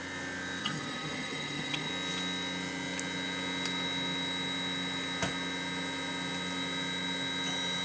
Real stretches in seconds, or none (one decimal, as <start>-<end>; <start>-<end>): 0.0-0.6; 1.9-7.8